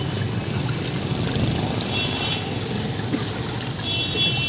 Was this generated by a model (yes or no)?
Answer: no